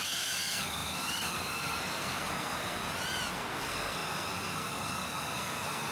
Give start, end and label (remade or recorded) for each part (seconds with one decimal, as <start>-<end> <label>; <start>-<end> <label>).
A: 0.0-2.8 remade; 2.8-3.3 recorded; 3.3-5.9 remade